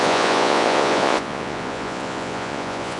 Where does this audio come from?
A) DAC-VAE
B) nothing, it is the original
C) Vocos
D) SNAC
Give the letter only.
C